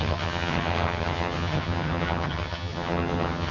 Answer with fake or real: fake